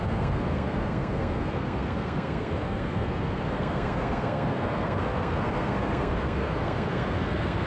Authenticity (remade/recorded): remade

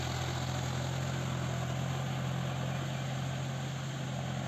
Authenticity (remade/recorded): recorded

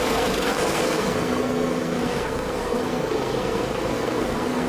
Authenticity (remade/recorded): remade